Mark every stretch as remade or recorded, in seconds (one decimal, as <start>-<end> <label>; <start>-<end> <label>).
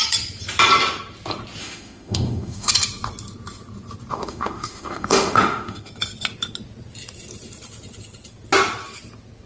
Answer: 0.0-1.6 recorded; 1.6-2.7 remade; 2.7-4.1 recorded; 4.1-5.9 remade; 5.9-9.5 recorded